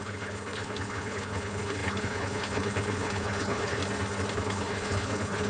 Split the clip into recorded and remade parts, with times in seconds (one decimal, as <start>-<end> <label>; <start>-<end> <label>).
0.0-3.8 remade; 3.8-4.3 recorded; 4.3-5.5 remade